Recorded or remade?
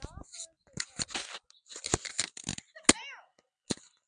recorded